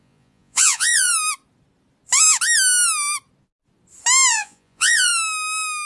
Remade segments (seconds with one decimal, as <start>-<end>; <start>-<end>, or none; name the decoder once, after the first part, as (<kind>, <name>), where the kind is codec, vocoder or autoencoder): 0.0-1.1 (vocoder, Vocos); 4.3-5.1